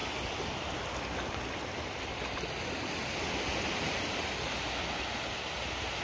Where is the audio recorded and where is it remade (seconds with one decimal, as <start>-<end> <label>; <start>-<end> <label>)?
0.0-6.0 recorded